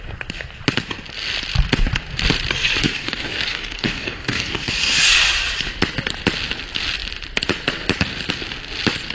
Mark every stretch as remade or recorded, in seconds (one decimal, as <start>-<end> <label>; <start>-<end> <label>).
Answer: 0.0-2.8 recorded; 2.8-4.7 remade; 4.7-9.1 recorded